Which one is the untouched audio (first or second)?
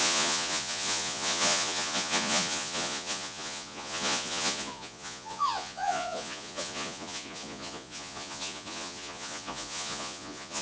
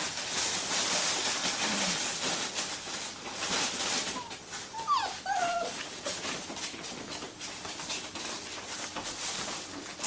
second